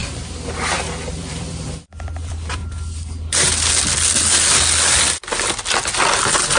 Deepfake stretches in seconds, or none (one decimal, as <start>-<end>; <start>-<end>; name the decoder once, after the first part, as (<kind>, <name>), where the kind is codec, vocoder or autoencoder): 1.1-2.6 (vocoder, BigVGAN v2)